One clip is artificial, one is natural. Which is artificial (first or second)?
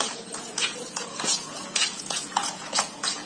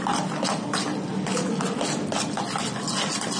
first